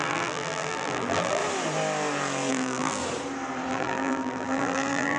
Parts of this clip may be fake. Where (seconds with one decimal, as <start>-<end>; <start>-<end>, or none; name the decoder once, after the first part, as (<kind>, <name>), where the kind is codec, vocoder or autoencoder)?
0.0-1.4 (vocoder, BigVGAN v2); 2.5-3.0; 3.7-5.2